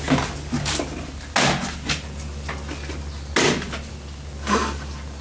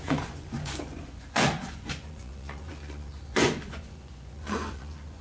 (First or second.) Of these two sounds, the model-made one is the second